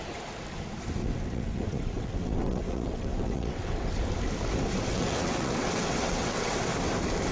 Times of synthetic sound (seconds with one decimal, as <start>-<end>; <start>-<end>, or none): 1.0-3.9; 4.9-6.5